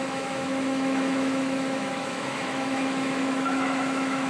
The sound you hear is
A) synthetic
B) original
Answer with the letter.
A